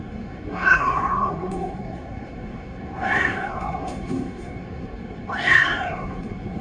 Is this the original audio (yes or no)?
no